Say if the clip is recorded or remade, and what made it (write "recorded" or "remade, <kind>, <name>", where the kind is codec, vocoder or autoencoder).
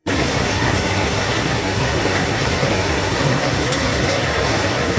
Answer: remade, codec, SNAC